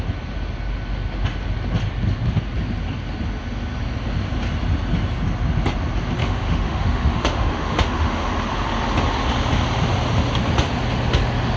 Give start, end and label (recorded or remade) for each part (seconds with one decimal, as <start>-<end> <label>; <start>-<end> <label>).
0.0-6.2 recorded; 6.2-8.3 remade; 8.3-11.6 recorded